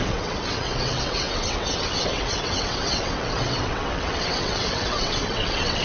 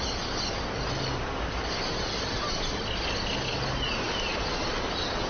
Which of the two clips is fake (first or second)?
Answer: first